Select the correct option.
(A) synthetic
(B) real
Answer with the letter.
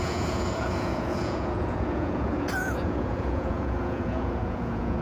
A